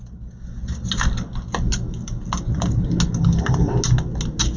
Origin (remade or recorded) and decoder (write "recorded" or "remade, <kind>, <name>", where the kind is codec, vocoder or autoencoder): recorded